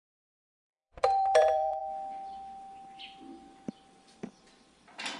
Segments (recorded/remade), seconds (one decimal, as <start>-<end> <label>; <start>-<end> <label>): 0.0-1.8 remade; 1.8-4.2 recorded; 4.2-5.2 remade